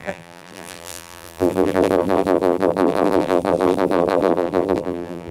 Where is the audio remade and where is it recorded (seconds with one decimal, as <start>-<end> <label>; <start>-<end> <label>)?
0.0-5.3 remade